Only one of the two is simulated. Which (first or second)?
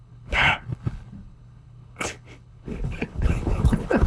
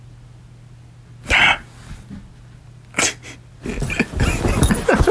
first